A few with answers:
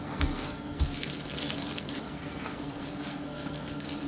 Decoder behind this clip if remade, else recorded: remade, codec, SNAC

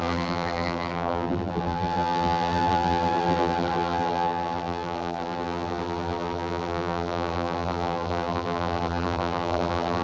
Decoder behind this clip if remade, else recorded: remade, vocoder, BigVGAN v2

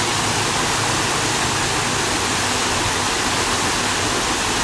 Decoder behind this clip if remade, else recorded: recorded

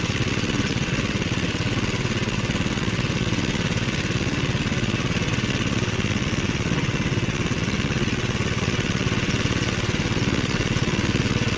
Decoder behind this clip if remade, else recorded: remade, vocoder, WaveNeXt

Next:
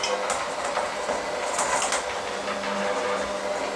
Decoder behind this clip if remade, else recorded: recorded